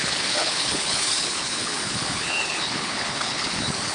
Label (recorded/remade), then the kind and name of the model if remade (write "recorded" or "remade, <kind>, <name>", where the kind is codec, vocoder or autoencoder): remade, codec, HILCodec